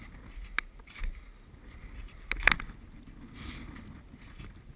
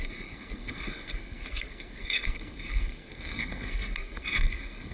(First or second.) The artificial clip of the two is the second